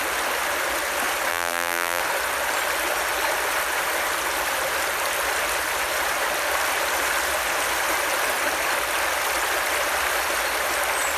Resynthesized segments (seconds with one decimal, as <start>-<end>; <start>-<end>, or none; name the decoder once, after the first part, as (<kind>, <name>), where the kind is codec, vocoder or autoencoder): 1.3-2.0 (vocoder, BigVGAN v2)

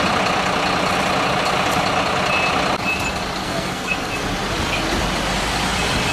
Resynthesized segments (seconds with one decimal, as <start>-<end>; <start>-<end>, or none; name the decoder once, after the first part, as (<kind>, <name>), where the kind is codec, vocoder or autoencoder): 3.4-4.1 (codec, SNAC)

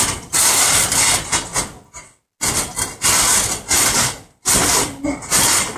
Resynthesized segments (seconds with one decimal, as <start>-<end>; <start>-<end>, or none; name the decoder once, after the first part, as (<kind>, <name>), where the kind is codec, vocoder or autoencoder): none

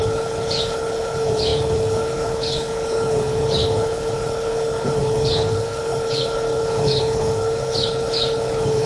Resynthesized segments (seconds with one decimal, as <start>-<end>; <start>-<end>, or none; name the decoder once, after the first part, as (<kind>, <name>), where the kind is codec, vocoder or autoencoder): 0.0-8.9 (codec, HILCodec)

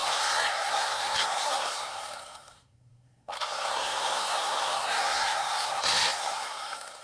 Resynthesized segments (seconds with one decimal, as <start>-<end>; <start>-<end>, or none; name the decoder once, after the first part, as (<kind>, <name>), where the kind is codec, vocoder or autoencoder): 0.0-7.0 (codec, SNAC)